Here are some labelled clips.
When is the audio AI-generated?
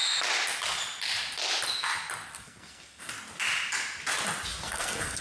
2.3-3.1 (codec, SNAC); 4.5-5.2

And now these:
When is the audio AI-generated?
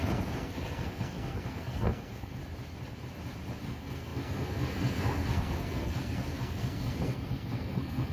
0.0-2.4 (codec, SNAC); 3.6-8.1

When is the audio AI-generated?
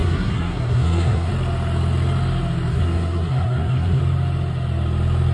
0.0-1.3 (codec, SNAC); 2.7-4.0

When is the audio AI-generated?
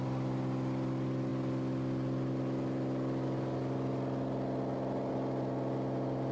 none